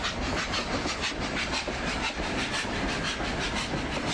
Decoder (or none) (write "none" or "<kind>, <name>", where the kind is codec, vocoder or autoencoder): none